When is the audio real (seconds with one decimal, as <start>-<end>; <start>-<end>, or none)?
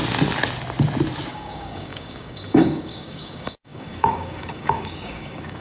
0.0-1.3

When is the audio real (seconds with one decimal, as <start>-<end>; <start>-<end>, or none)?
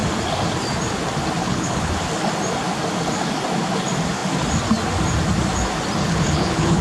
0.0-1.4; 1.9-6.0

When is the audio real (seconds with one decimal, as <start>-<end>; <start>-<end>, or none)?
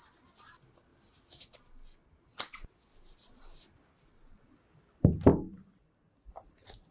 0.0-6.9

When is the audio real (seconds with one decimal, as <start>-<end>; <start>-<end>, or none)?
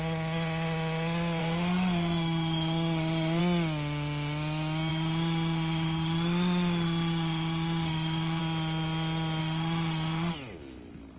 0.0-1.4; 3.4-4.9; 8.4-9.4; 10.3-11.2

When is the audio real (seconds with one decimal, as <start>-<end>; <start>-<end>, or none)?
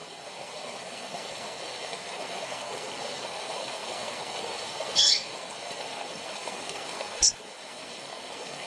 none